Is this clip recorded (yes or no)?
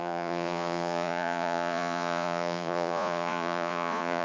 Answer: no